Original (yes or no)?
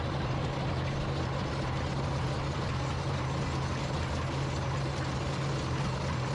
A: yes